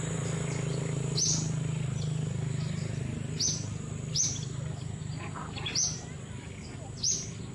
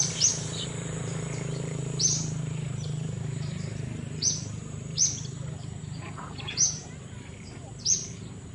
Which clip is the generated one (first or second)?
second